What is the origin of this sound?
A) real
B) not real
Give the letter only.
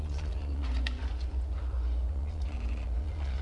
B